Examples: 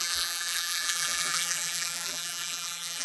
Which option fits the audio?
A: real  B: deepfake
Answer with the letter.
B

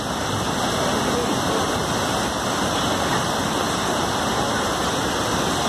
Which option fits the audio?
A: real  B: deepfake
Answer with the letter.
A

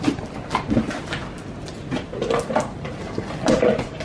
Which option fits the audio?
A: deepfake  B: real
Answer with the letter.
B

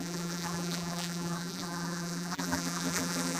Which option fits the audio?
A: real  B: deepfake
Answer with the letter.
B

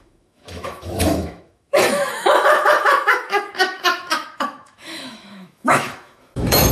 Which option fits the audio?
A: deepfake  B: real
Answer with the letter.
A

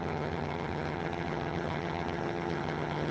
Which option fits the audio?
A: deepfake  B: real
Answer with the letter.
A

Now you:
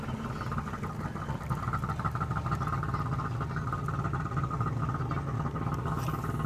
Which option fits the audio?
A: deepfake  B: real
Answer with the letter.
B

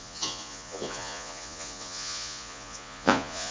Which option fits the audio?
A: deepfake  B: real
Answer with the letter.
A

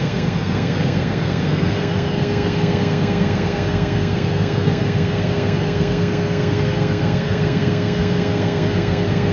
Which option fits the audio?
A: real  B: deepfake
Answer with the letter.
B